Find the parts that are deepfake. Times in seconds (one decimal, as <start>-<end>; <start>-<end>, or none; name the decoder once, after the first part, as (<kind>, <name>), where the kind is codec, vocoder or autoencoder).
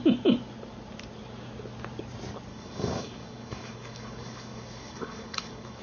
2.5-5.8 (codec, DAC)